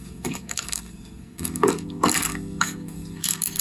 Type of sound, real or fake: fake